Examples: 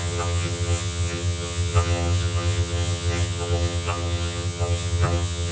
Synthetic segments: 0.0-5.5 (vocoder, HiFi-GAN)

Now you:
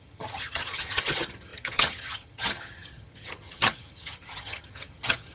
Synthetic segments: 0.0-5.3 (vocoder, HiFi-GAN)